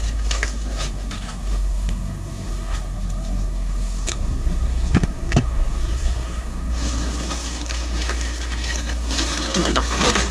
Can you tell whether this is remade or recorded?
remade